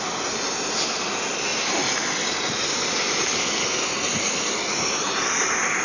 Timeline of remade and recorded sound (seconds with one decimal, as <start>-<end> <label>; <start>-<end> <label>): 0.0-5.8 recorded